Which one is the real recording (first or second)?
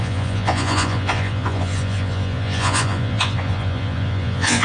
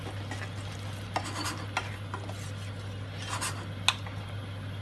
second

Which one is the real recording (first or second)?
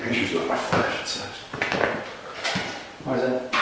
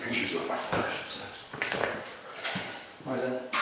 first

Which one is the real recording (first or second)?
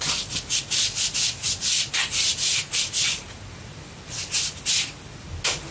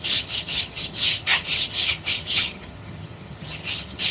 first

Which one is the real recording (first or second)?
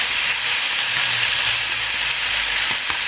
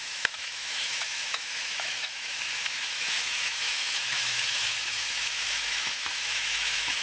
first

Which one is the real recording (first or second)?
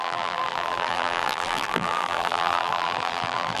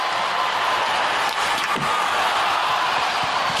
second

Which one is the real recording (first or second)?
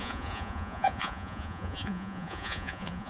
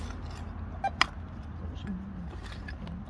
second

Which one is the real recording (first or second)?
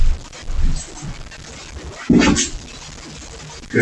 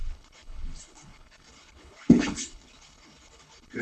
first